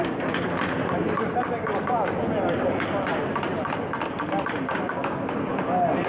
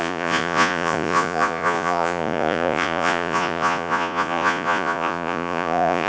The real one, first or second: first